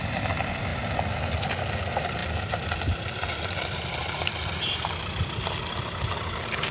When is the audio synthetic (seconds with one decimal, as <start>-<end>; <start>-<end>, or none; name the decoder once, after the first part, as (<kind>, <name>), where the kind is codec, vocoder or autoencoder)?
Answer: none